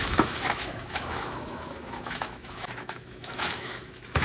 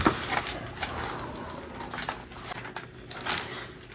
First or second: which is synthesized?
first